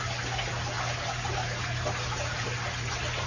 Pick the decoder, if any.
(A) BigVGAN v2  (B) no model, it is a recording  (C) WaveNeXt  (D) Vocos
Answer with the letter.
B